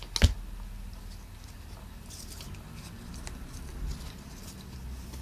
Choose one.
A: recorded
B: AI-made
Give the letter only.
A